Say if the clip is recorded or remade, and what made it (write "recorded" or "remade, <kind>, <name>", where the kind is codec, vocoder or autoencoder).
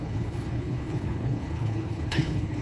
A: remade, codec, HILCodec